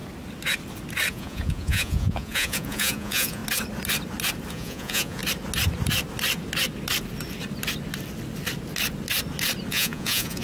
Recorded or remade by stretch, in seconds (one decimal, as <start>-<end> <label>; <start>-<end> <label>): 0.0-1.1 recorded; 1.1-3.4 remade; 3.4-4.5 recorded; 4.5-5.2 remade; 5.2-9.7 recorded; 9.7-10.4 remade